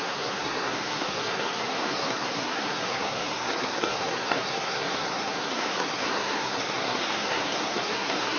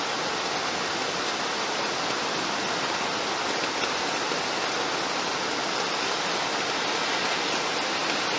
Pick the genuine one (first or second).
second